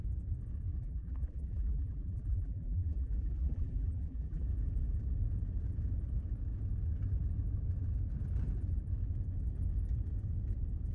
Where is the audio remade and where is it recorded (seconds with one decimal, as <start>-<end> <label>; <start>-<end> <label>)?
0.0-0.7 recorded; 0.7-4.4 remade; 4.4-10.9 recorded